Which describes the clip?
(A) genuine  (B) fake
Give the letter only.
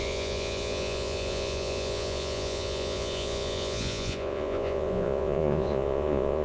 B